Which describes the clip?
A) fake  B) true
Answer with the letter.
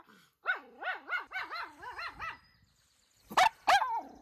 B